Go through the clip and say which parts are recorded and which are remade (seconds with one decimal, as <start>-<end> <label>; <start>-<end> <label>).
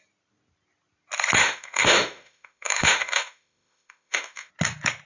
0.0-1.4 recorded; 1.4-4.5 remade; 4.5-5.1 recorded